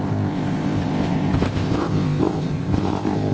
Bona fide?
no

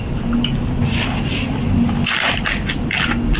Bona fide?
yes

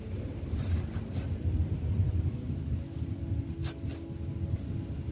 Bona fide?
yes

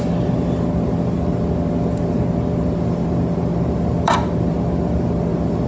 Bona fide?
yes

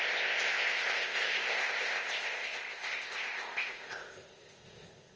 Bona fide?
no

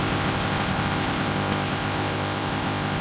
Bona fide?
no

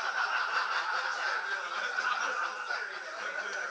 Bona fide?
yes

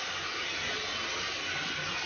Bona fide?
yes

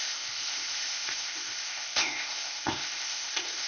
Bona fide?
no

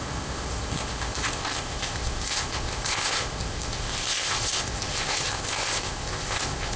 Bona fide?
no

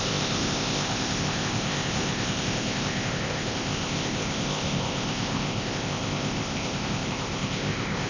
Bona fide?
no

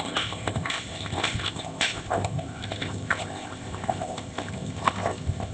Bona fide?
no